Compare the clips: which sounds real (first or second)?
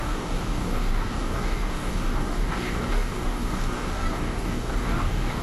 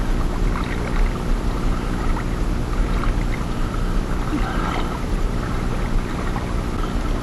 second